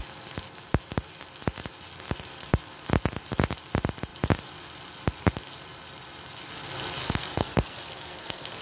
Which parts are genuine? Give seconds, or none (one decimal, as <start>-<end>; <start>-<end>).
0.0-7.0

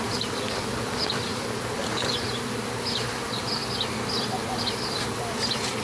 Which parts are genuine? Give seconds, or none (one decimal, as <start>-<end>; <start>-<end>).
0.0-5.8

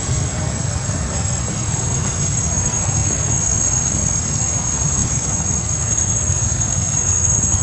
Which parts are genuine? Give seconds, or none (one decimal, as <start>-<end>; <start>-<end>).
none